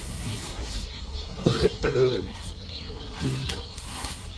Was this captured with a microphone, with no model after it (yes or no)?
no